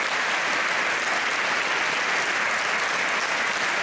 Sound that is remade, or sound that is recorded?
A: recorded